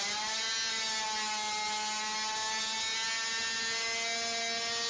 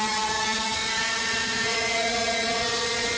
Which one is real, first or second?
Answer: first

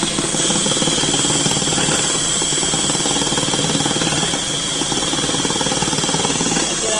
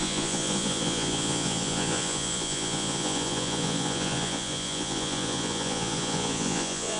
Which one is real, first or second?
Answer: first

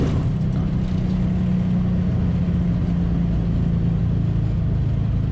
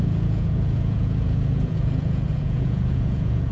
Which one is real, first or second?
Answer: first